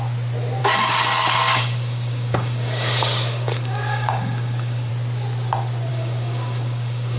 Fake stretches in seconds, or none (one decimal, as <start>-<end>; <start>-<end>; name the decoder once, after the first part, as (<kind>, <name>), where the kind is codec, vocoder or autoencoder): 0.6-4.9 (codec, DAC); 5.9-7.2